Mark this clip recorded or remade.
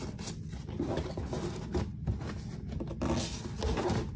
recorded